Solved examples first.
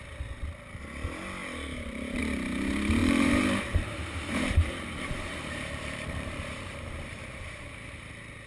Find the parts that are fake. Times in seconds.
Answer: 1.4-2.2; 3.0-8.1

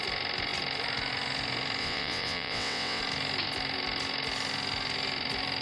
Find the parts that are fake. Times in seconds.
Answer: 1.8-3.0

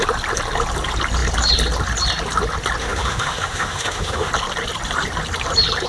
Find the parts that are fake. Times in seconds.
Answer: 2.8-4.3

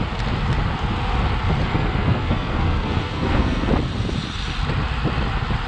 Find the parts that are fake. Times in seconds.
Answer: 1.7-3.7

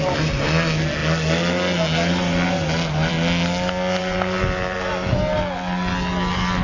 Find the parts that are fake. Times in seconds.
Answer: 4.0-5.4